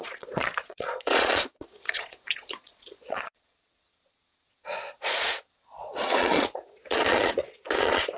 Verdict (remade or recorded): remade